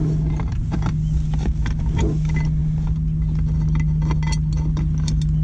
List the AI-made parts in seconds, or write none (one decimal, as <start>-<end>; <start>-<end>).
none